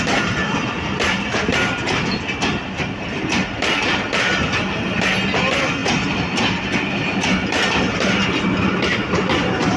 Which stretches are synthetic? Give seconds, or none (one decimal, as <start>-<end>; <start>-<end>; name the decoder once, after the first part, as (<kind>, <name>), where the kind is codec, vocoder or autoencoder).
none